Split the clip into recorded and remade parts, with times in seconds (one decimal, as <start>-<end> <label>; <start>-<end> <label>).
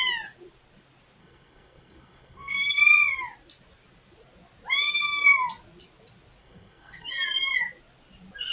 0.0-1.2 recorded; 1.2-2.8 remade; 2.8-6.4 recorded; 6.4-7.1 remade; 7.1-8.5 recorded